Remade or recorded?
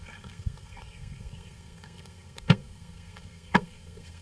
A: remade